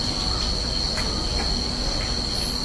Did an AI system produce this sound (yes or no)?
no